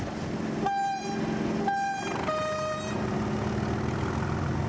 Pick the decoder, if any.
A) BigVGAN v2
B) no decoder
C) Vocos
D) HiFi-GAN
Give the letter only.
B